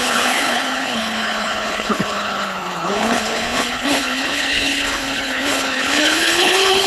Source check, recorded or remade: remade